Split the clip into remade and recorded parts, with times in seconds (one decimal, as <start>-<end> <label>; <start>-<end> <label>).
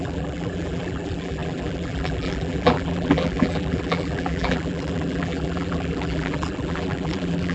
0.0-7.5 remade